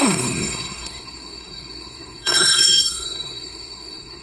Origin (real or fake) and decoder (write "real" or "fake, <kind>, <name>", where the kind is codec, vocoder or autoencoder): fake, codec, SNAC